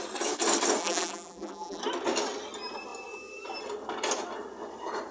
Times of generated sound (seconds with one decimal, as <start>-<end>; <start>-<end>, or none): 0.8-1.8